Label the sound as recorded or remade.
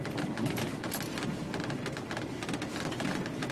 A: recorded